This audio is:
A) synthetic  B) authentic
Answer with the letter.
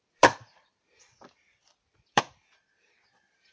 A